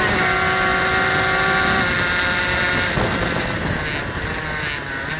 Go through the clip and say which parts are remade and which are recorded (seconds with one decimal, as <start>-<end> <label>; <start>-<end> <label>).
0.0-5.2 recorded